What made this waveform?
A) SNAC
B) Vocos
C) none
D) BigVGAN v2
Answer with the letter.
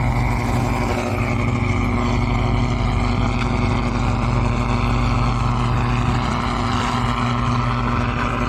C